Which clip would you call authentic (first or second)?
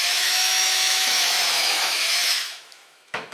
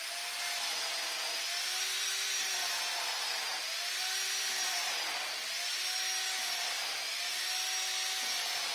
second